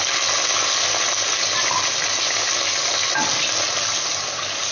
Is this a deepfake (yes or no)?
no